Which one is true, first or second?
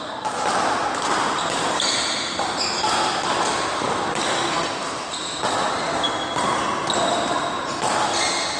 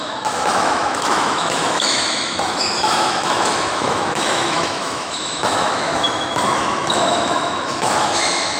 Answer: first